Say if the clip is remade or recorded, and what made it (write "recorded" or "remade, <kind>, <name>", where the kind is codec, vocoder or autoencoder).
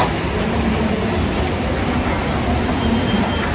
recorded